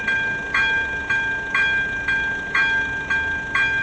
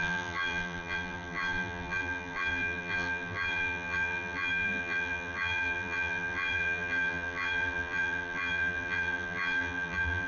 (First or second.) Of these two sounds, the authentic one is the first